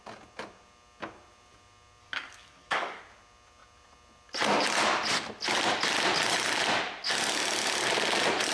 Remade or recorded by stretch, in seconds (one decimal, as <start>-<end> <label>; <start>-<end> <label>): 0.0-2.0 recorded; 2.0-3.0 remade; 3.0-8.5 recorded

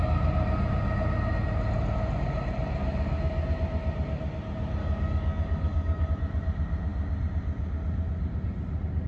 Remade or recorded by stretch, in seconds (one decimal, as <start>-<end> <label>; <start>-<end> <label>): 0.0-4.8 recorded; 4.8-6.1 remade; 6.1-9.1 recorded

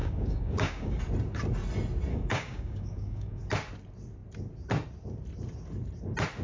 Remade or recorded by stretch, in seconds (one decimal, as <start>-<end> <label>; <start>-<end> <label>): 0.0-1.0 remade; 1.0-2.1 recorded; 2.1-3.4 remade; 3.4-6.4 recorded

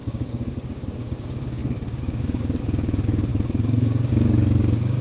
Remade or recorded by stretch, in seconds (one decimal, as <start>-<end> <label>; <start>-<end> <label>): 0.0-5.0 remade

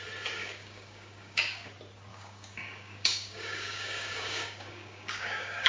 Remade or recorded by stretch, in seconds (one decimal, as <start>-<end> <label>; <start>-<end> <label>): 0.0-0.4 recorded; 0.4-1.7 remade; 1.7-2.1 recorded; 2.1-5.7 remade

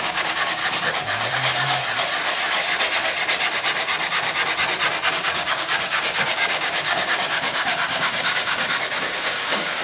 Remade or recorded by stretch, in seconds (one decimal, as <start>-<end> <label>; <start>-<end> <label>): 0.0-0.6 remade; 0.6-1.3 recorded; 1.3-1.8 remade; 1.8-5.1 recorded; 5.1-9.8 remade